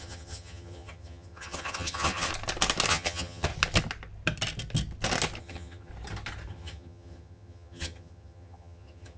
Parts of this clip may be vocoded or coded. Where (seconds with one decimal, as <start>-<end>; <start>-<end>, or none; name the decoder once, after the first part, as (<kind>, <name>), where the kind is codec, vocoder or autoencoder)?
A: 0.0-2.3 (vocoder, HiFi-GAN); 2.9-3.5; 5.4-5.9; 6.5-9.2

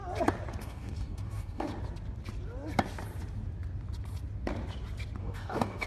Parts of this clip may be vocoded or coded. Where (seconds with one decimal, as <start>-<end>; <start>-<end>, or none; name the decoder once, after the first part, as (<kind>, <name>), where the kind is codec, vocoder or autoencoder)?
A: 0.6-1.7 (codec, DAC); 5.2-5.9

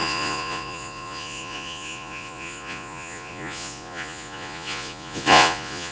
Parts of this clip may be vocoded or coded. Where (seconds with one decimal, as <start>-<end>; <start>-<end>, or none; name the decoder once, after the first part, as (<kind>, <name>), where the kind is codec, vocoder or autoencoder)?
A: 0.0-5.9 (vocoder, Vocos)

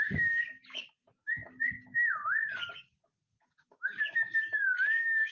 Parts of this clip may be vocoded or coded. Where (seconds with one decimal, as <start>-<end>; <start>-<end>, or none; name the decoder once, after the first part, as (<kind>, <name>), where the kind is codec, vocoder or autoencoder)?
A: 0.0-5.3 (codec, DAC)

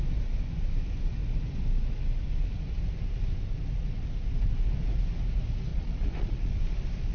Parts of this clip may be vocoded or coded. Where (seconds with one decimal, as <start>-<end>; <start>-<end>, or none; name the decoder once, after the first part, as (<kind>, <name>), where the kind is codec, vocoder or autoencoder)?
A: 5.7-6.6 (vocoder, Vocos)

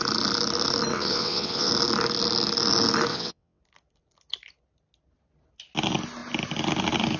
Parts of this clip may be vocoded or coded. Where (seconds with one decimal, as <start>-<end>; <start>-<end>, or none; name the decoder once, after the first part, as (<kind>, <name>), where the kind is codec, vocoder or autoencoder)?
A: 0.9-1.7 (vocoder, WaveNeXt); 3.1-3.6

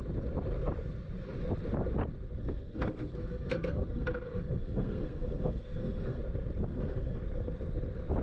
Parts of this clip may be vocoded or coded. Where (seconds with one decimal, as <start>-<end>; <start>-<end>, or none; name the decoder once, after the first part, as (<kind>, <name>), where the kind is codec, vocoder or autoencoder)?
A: 2.4-6.2 (codec, SNAC); 6.7-7.2